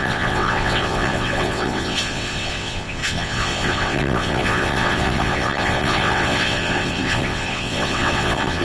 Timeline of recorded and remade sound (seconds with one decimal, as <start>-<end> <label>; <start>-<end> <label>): 0.0-8.6 remade